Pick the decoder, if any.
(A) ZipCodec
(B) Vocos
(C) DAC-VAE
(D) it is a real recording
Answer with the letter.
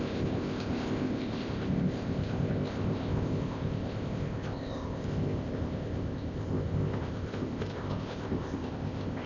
A